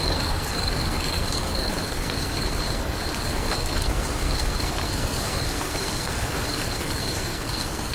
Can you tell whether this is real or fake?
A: fake